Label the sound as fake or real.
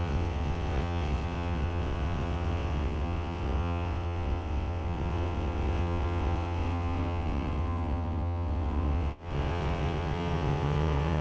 fake